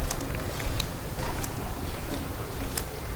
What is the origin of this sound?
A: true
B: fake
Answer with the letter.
B